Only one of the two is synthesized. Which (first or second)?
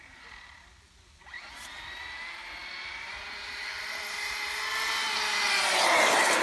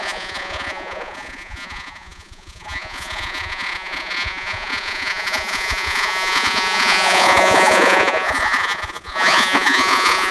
second